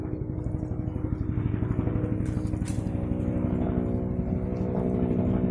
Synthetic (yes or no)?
no